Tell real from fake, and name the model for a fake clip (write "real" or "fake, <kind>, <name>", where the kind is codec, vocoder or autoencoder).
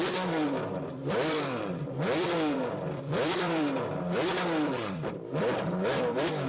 fake, vocoder, BigVGAN v2